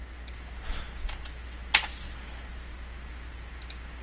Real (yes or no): yes